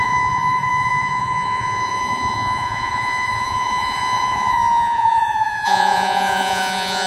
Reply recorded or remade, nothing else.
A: remade